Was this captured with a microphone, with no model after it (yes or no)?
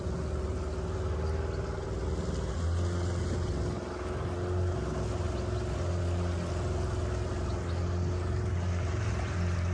yes